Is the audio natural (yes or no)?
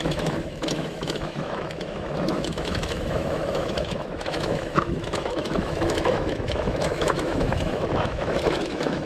no